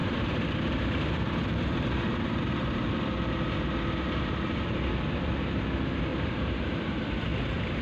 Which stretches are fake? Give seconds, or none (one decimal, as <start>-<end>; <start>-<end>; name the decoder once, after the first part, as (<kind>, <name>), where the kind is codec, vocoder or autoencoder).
0.0-3.0 (vocoder, BigVGAN v2); 6.1-6.6